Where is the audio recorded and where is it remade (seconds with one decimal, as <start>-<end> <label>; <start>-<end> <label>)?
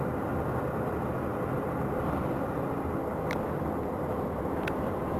0.0-5.2 recorded